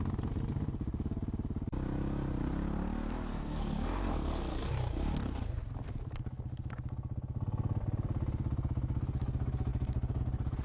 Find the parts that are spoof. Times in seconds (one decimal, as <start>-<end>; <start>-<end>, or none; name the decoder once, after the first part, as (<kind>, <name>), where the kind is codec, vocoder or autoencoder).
3.3-4.7 (codec, SNAC)